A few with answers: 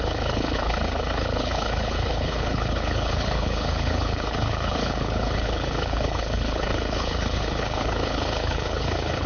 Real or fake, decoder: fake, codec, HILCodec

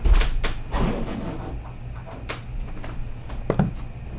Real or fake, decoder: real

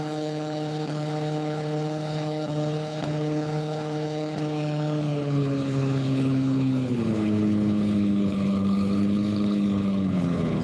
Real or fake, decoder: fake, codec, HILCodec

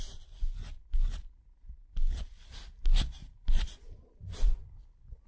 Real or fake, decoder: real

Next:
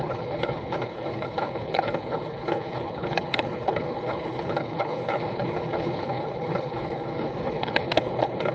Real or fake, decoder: fake, codec, HILCodec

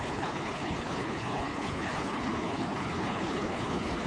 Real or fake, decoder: fake, codec, HILCodec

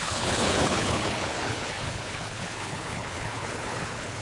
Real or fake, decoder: fake, codec, HILCodec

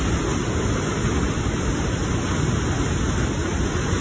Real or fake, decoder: real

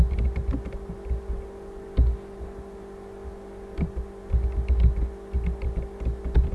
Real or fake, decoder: real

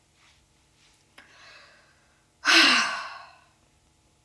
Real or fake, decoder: real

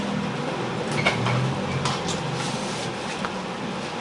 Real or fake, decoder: real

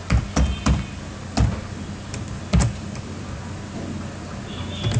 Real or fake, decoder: real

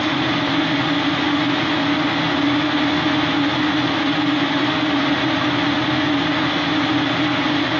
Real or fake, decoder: real